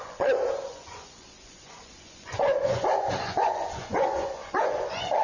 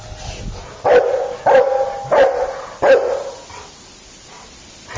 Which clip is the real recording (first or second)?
second